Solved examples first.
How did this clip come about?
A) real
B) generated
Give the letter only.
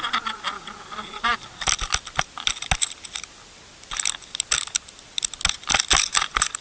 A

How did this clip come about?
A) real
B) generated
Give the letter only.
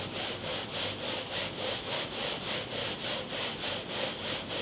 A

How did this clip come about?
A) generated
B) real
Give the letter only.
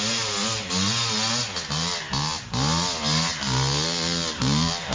B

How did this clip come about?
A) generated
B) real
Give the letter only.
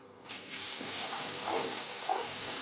A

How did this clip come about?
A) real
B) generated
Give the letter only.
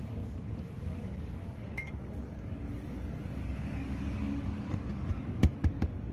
B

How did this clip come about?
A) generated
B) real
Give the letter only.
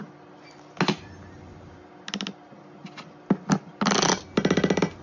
B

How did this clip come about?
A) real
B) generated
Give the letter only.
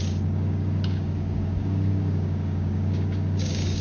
B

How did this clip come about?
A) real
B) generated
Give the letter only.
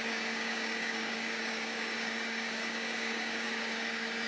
B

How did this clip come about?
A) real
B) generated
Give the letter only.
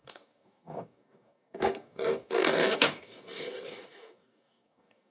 B